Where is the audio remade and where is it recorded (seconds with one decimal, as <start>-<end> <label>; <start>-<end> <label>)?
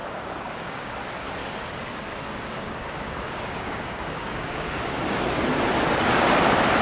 0.0-0.9 remade; 0.9-1.4 recorded; 1.4-5.1 remade; 5.1-6.8 recorded